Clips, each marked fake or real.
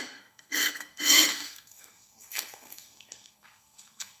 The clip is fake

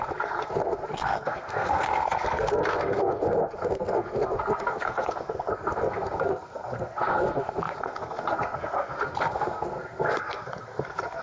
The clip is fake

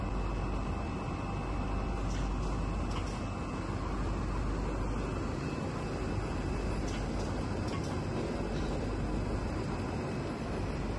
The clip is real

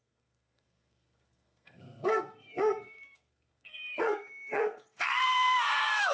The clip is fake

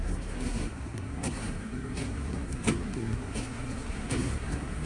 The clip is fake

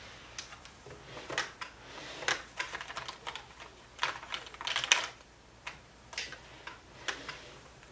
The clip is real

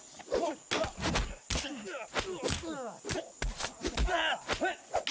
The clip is real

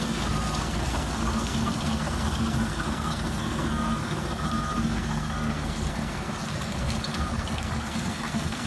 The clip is fake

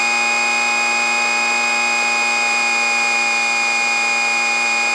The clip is real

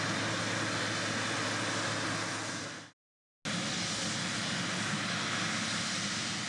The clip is real